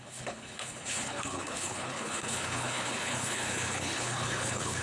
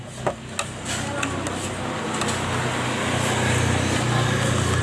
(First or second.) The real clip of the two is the second